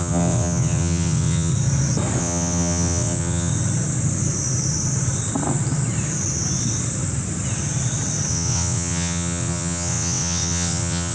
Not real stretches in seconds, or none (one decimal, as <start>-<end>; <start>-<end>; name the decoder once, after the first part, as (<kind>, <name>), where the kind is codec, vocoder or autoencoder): 0.0-1.5 (vocoder, WaveNeXt); 2.2-3.5; 8.3-11.1